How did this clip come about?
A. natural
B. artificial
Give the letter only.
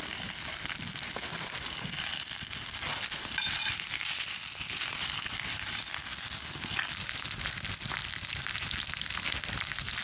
A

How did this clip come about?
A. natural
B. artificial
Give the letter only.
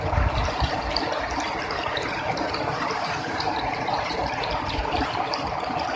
A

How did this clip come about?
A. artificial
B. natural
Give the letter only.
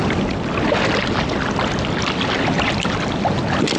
B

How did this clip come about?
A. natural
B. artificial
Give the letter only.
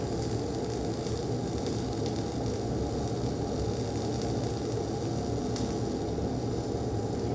A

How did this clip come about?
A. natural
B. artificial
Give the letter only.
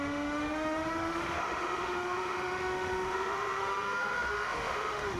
B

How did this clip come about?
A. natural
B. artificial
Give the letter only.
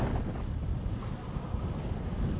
A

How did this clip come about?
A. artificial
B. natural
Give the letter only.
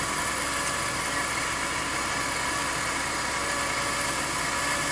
B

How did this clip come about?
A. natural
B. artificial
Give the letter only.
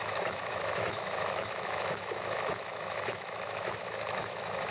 B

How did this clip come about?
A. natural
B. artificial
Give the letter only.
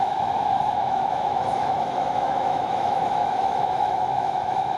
B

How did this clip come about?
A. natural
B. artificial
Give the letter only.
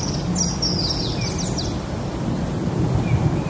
A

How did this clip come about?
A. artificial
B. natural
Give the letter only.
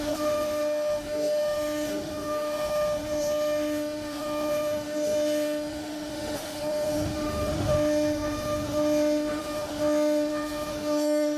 A